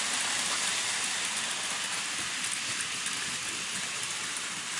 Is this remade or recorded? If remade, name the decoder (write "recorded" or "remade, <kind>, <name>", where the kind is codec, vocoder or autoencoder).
recorded